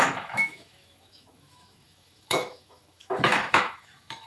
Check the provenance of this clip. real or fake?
fake